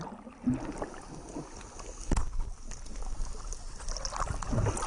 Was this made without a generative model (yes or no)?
yes